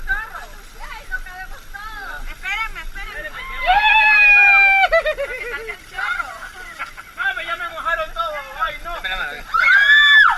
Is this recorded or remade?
recorded